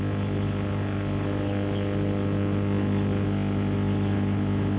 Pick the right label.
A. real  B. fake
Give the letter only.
A